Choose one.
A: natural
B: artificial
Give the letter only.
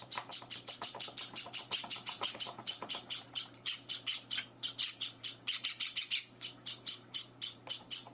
B